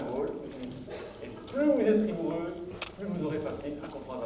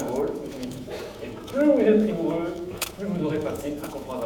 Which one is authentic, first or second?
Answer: first